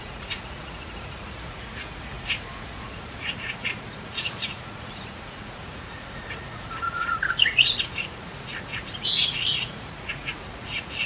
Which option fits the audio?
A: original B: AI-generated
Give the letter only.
B